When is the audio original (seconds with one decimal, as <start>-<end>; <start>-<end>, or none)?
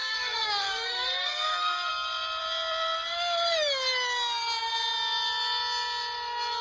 1.9-6.6